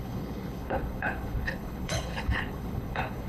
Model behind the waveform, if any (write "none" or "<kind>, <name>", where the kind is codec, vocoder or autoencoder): codec, HILCodec